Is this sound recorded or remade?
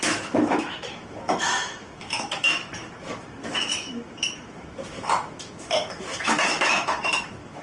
remade